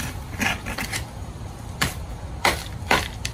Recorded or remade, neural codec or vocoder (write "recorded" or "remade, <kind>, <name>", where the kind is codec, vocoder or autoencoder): remade, vocoder, BigVGAN v2